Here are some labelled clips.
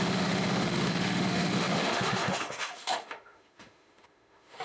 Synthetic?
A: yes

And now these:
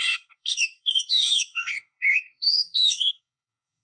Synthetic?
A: yes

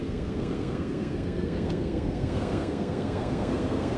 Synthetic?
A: yes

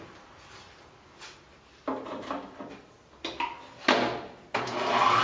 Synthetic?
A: no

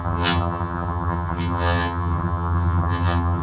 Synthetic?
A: yes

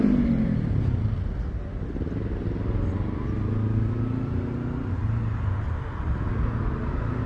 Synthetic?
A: no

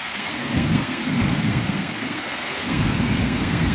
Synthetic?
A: yes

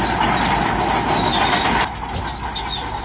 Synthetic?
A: no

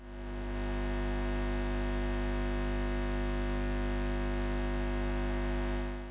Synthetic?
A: no